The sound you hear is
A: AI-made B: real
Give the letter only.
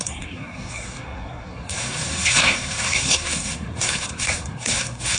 A